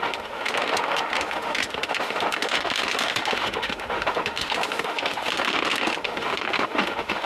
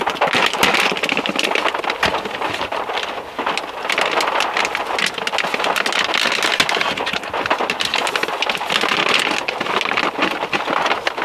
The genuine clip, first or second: second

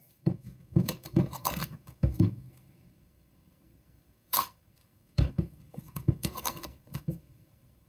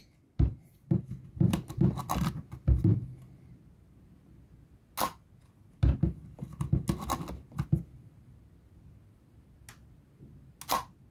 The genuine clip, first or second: second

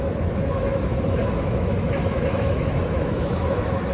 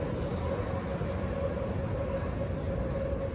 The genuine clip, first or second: second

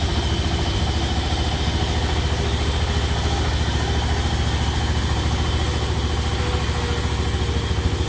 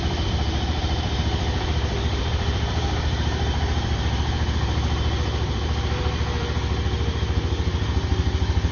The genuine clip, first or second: first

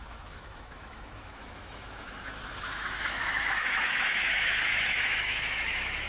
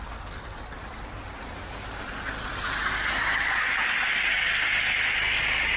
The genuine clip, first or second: second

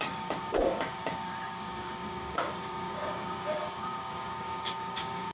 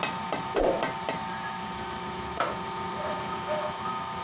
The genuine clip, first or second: second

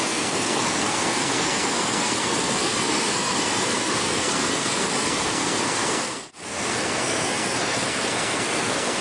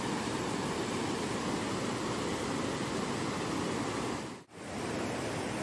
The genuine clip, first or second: second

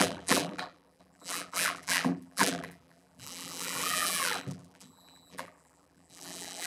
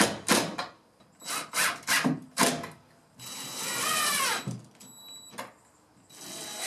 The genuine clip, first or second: second